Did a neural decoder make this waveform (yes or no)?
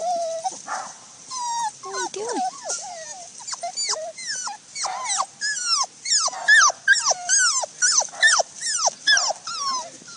no